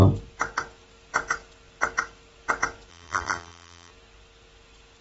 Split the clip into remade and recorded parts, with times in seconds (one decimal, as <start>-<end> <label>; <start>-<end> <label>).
0.0-2.9 recorded; 2.9-3.9 remade; 3.9-5.0 recorded